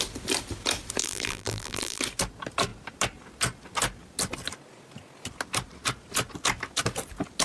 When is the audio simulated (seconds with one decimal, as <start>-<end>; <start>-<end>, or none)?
1.0-2.0